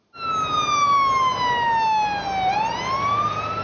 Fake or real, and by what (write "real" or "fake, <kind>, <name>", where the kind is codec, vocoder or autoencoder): real